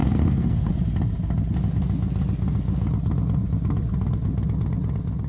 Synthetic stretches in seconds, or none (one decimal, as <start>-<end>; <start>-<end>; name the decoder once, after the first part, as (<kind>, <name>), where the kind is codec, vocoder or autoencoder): 0.0-0.7 (codec, SNAC)